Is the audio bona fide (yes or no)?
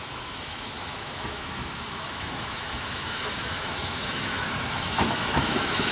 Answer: no